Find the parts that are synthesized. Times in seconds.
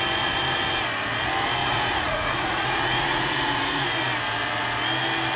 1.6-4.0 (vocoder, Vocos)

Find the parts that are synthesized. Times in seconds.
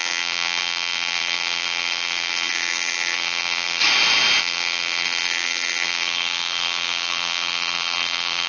0.0-3.8 (vocoder, BigVGAN v2); 4.4-8.5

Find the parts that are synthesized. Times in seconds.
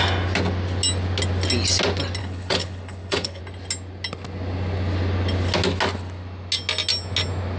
2.2-3.4 (codec, HILCodec)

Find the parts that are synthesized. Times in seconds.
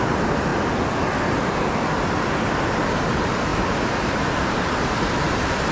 3.5-4.7 (vocoder, BigVGAN v2)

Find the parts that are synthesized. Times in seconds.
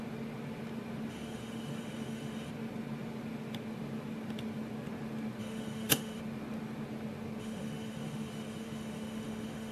1.1-2.5 (autoencoder, DAC-VAE); 5.4-6.2; 7.4-9.7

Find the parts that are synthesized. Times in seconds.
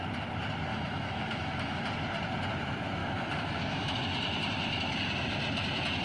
0.7-1.8 (autoencoder, DAC-VAE); 3.0-4.0